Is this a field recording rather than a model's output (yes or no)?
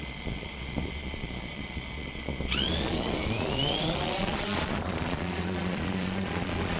no